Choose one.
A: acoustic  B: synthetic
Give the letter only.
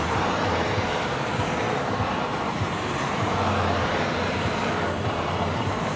B